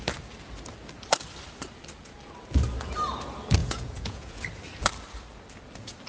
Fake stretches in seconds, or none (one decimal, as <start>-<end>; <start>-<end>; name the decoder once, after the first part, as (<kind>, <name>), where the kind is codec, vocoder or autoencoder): 3.6-4.4 (vocoder, Vocos)